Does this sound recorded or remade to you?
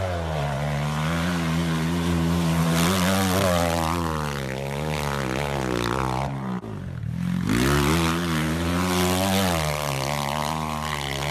recorded